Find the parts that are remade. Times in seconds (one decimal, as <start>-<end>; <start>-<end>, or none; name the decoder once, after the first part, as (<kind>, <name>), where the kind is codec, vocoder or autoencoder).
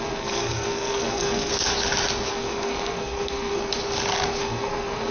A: 0.0-1.5 (codec, SNAC); 2.3-3.7; 4.4-5.1